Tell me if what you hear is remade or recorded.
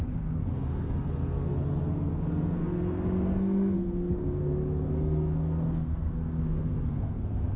remade